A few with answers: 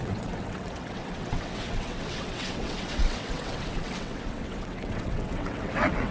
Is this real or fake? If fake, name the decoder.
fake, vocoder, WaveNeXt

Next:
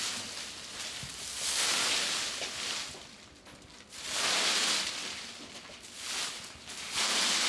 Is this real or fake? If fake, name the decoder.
real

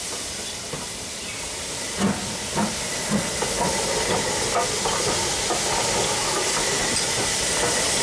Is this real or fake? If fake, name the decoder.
real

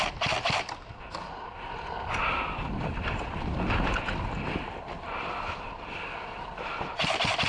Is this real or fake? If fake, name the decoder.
real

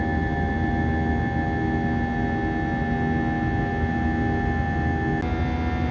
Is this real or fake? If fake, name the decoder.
real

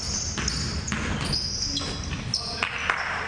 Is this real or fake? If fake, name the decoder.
real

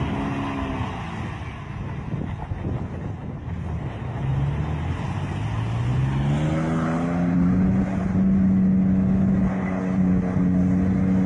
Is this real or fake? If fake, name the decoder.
real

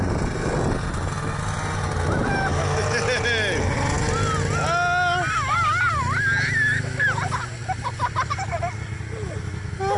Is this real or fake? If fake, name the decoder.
real